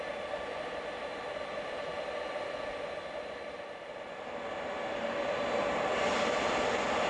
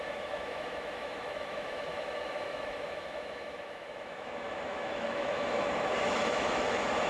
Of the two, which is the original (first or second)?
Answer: first